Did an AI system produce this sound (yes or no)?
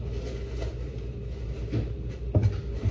no